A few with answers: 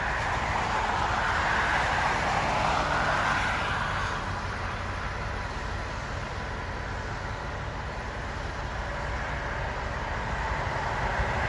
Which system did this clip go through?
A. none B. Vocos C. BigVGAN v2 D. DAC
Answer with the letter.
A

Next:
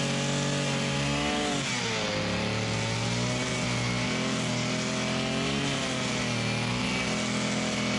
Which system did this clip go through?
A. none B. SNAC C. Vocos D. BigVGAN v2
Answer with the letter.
A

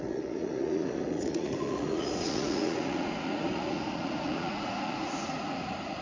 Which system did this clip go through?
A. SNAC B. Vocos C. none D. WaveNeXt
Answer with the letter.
B